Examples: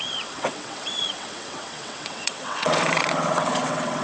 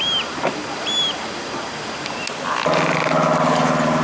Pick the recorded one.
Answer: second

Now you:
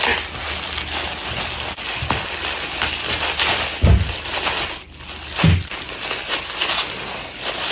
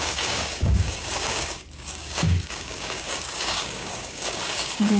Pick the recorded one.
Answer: first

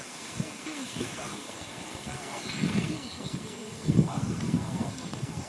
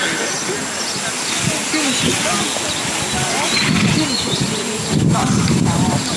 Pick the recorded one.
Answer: second